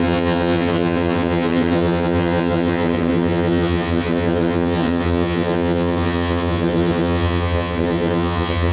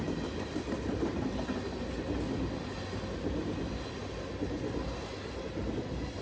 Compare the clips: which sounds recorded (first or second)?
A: second